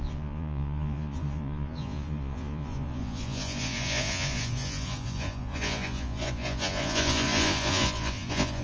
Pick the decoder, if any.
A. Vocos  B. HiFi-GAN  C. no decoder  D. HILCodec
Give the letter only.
A